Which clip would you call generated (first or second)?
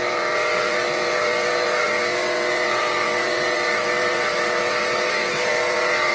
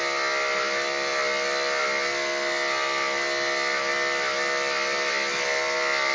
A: first